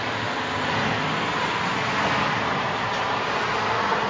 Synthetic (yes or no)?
no